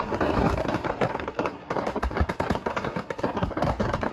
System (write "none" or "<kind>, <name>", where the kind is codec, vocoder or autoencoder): codec, SNAC